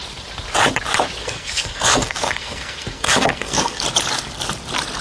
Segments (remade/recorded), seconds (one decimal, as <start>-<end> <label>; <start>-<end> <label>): 0.0-1.2 recorded; 1.2-3.8 remade; 3.8-5.0 recorded

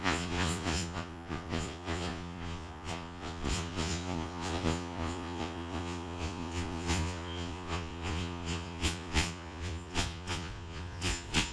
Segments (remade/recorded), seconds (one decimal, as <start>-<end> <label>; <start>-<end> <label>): 0.0-11.5 remade

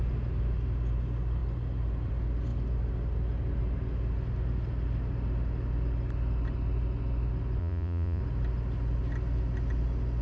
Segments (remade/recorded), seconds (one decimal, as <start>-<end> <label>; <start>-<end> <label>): 0.0-7.6 recorded; 7.6-8.2 remade; 8.2-10.2 recorded

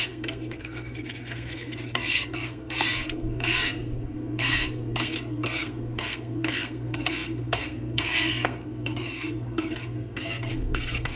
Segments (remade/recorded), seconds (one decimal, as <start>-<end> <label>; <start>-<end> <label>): 0.0-11.2 remade

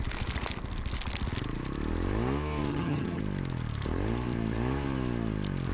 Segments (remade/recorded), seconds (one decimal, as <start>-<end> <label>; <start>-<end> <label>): 0.0-2.7 recorded; 2.7-3.2 remade; 3.2-5.7 recorded

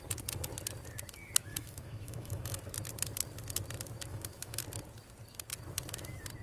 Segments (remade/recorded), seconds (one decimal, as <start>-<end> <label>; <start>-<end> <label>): 0.0-1.5 recorded; 1.5-2.6 remade; 2.6-4.1 recorded; 4.1-4.6 remade; 4.6-6.4 recorded